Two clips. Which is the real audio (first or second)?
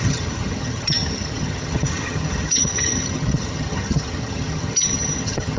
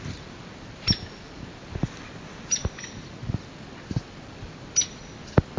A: second